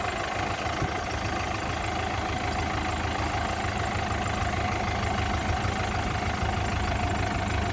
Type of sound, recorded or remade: recorded